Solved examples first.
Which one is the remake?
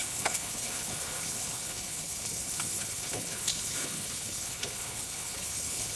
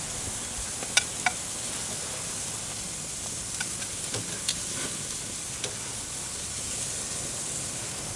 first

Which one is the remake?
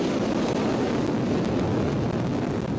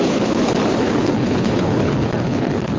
second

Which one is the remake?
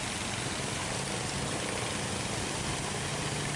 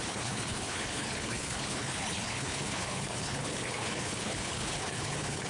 second